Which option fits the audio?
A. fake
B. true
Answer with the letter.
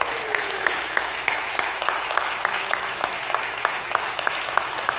A